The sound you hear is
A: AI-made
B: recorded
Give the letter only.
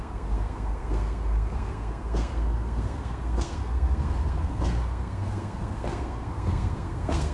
A